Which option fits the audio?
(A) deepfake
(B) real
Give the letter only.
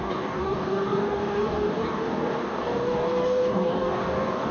A